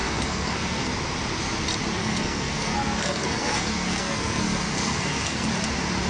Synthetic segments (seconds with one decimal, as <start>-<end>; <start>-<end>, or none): 0.0-0.9; 2.0-5.5